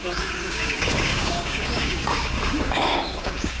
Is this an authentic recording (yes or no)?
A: no